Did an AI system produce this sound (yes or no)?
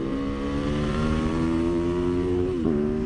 yes